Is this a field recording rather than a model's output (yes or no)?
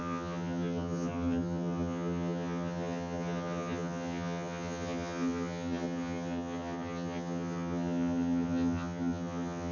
no